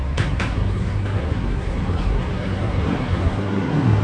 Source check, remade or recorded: remade